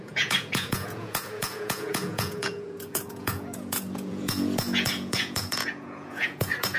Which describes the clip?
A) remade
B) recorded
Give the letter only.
A